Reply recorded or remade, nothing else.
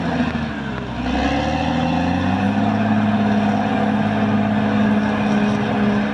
recorded